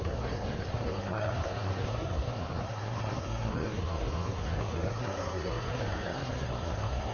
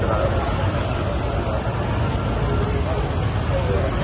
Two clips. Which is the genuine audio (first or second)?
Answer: second